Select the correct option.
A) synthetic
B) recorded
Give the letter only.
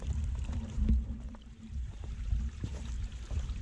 A